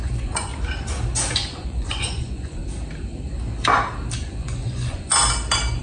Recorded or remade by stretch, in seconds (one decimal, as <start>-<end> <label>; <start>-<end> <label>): 0.0-0.5 remade; 0.5-1.3 recorded; 1.3-2.6 remade; 2.6-4.2 recorded; 4.2-5.1 remade; 5.1-5.8 recorded

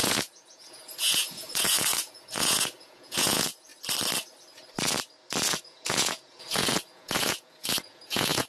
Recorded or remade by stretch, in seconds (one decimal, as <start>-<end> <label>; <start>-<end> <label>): 0.0-3.7 remade; 3.7-5.6 recorded; 5.6-8.5 remade

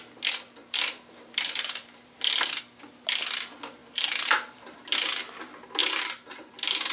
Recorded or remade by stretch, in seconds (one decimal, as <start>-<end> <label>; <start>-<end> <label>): 0.0-0.6 recorded; 0.6-2.6 remade; 2.6-3.8 recorded; 3.8-5.2 remade; 5.2-5.8 recorded; 5.8-6.5 remade; 6.5-6.9 recorded

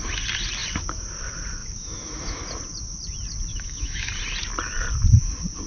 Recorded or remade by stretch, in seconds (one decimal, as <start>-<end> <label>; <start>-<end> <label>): 0.0-1.6 recorded; 1.6-2.4 remade; 2.4-3.5 recorded; 3.5-4.1 remade; 4.1-5.7 recorded

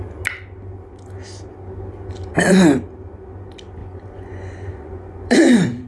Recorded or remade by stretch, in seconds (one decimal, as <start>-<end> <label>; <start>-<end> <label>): 0.0-3.8 recorded; 3.8-5.9 remade

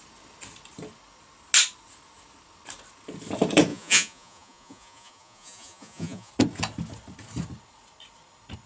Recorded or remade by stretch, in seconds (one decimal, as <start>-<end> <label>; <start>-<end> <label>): 0.0-3.7 recorded; 3.7-6.3 remade; 6.3-8.7 recorded